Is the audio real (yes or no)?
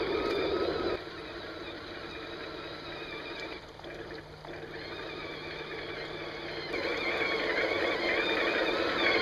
yes